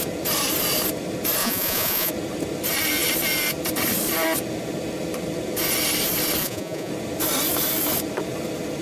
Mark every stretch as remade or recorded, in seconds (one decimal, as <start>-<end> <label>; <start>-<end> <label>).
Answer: 0.0-1.4 recorded; 1.4-2.1 remade; 2.1-6.4 recorded; 6.4-6.9 remade; 6.9-8.8 recorded